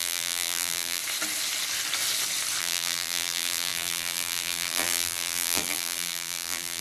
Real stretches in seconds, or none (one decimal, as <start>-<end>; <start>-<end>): 1.0-2.6